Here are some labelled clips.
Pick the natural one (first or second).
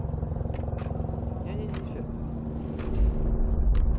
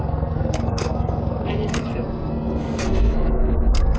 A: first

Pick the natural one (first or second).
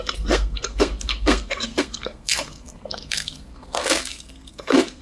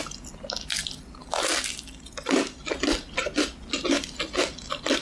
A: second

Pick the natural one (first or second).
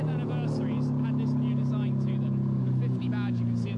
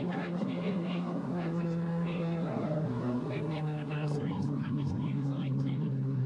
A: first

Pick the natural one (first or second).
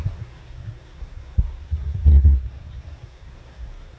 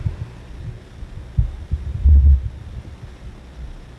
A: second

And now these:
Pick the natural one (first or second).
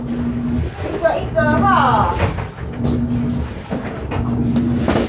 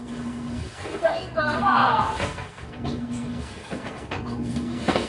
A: first